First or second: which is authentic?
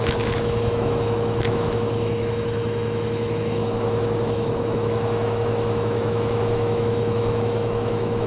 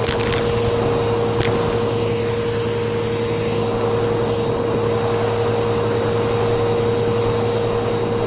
second